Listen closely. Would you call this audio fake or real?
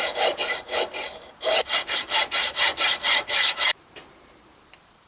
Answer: fake